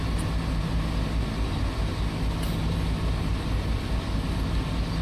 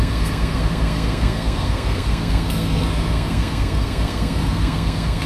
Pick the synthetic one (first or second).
second